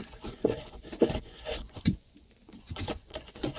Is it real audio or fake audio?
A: fake